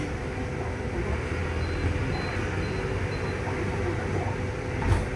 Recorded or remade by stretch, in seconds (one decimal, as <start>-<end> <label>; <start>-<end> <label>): 0.0-5.2 recorded

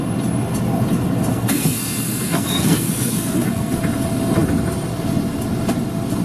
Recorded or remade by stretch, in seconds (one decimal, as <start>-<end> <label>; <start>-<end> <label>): 0.0-1.3 recorded; 1.3-3.8 remade; 3.8-6.2 recorded

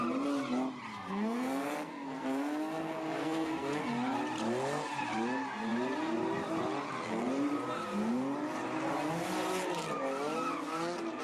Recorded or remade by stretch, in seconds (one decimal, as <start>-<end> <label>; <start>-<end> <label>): 0.0-0.9 recorded; 0.9-3.8 remade; 3.8-11.2 recorded

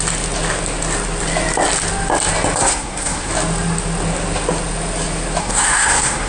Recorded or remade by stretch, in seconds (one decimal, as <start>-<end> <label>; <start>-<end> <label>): 0.0-2.6 recorded; 2.6-3.3 remade; 3.3-5.4 recorded; 5.4-6.3 remade

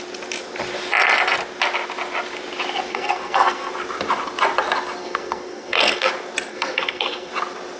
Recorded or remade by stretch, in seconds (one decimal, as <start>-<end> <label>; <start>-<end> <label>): 0.0-2.9 recorded; 2.9-3.7 remade; 3.7-5.0 recorded; 5.0-6.1 remade; 6.1-6.5 recorded; 6.5-7.3 remade; 7.3-7.8 recorded

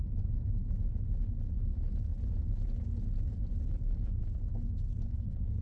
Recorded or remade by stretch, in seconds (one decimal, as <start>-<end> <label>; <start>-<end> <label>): 0.0-5.6 recorded